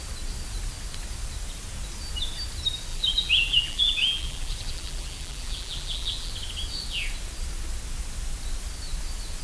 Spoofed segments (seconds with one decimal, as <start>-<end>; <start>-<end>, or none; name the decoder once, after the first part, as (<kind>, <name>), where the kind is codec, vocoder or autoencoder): 2.9-6.3 (vocoder, BigVGAN v2)